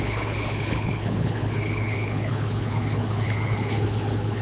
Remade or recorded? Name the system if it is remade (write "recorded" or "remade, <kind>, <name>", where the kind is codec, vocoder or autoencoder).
remade, codec, HILCodec